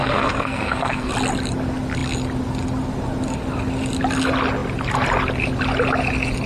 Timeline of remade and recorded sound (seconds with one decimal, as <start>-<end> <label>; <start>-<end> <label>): 0.0-1.1 remade; 1.1-6.5 recorded